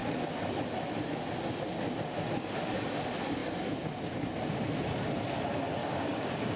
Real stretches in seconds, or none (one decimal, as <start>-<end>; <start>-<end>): 0.0-5.8